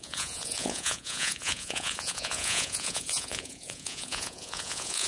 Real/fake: fake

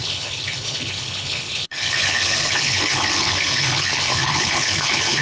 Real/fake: fake